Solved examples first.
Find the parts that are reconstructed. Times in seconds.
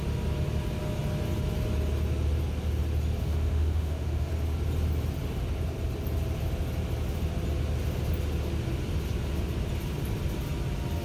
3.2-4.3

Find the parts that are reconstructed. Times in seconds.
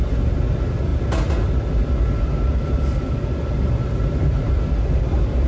none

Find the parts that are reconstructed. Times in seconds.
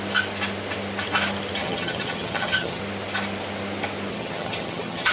1.6-2.8; 4.1-5.1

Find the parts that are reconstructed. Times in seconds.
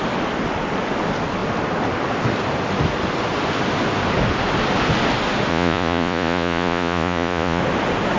5.5-7.6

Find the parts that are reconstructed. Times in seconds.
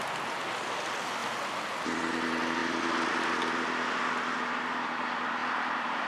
5.4-6.1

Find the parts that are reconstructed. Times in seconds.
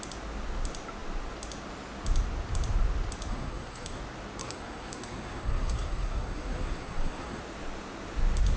3.3-4.0; 4.4-7.4